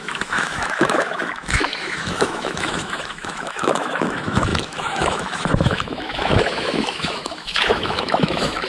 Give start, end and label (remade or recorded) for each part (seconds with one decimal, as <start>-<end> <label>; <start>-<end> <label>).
0.0-8.7 remade